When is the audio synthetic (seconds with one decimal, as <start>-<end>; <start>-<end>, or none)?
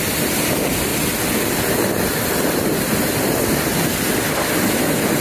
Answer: 0.0-0.9; 2.3-3.7